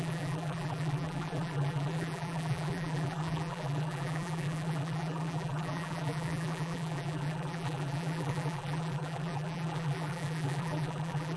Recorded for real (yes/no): no